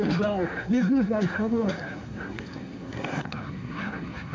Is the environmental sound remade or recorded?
remade